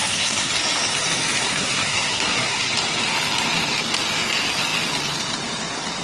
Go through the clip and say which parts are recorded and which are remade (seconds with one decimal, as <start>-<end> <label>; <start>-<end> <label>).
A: 0.0-0.5 remade; 0.5-1.4 recorded; 1.4-2.7 remade; 2.7-6.0 recorded